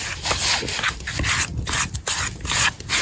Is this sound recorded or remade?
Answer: recorded